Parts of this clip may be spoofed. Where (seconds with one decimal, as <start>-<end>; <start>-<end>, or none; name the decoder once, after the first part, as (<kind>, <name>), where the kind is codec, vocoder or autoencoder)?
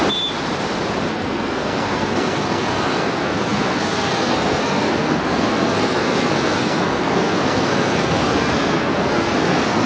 1.1-9.9 (codec, SNAC)